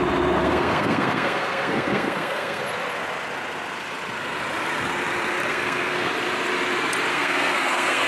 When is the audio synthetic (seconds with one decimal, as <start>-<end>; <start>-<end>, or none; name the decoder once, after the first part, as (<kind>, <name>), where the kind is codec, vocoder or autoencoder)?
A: 0.4-2.6 (codec, SNAC); 5.5-6.1; 7.1-8.1